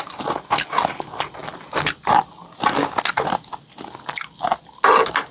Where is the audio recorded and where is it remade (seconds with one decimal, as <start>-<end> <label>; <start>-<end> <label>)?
0.0-5.3 recorded